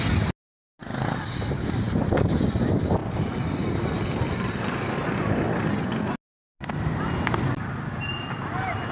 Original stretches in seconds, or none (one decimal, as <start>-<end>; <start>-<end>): 0.0-8.9